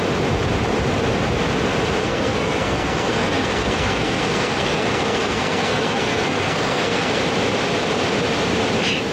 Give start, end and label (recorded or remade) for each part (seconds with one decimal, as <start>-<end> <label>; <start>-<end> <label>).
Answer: 0.0-2.0 recorded; 2.0-7.2 remade; 7.2-9.1 recorded